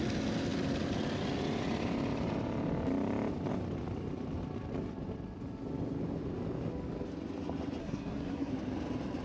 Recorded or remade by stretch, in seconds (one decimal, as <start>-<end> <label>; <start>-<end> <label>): 0.0-7.8 recorded; 7.8-8.5 remade; 8.5-9.2 recorded